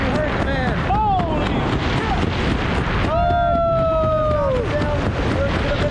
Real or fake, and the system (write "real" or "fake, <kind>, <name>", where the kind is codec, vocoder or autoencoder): real